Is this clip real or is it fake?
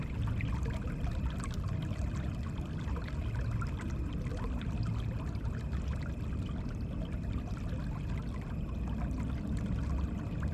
real